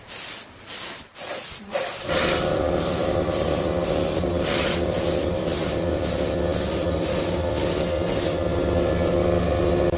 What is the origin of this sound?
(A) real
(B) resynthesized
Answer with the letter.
A